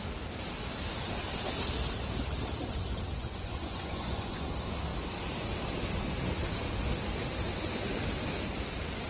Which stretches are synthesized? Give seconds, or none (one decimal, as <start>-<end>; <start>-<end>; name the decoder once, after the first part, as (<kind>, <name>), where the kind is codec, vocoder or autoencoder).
3.1-4.5 (vocoder, Vocos)